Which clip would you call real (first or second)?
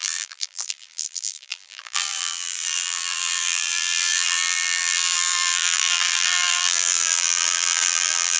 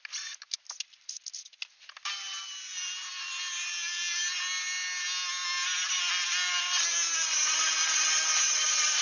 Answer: second